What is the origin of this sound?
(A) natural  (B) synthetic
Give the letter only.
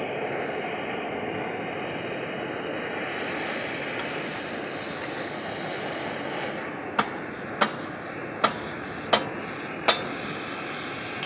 A